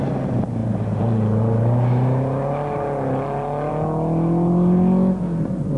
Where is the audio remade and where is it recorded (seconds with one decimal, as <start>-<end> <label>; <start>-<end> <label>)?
0.0-5.8 recorded

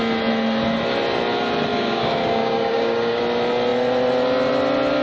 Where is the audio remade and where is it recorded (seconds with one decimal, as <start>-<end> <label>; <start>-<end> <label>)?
0.0-1.7 recorded; 1.7-3.2 remade; 3.2-5.0 recorded

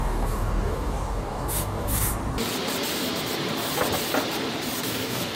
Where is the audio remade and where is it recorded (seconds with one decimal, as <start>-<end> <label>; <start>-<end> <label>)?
0.0-2.2 remade; 2.2-4.8 recorded; 4.8-5.4 remade